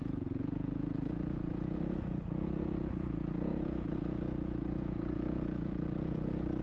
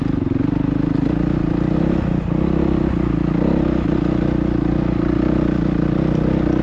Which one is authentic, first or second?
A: second